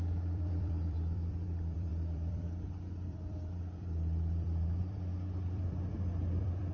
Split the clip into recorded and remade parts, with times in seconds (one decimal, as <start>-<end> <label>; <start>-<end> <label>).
0.0-6.7 remade